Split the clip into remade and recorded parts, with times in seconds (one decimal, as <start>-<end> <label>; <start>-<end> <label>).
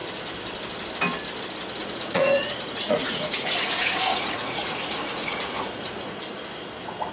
0.0-1.8 recorded; 1.8-6.1 remade; 6.1-7.1 recorded